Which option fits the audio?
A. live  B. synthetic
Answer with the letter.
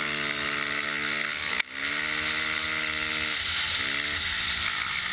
A